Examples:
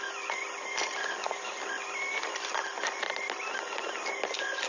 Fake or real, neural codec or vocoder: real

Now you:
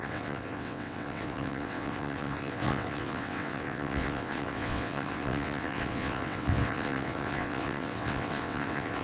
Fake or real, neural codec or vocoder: fake, vocoder, WaveNeXt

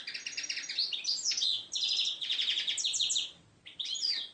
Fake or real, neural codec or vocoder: real